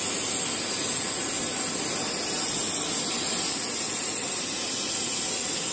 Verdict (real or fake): real